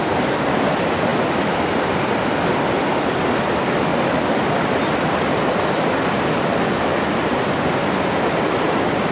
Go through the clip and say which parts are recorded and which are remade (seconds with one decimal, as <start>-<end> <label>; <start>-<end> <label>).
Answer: 0.0-9.1 recorded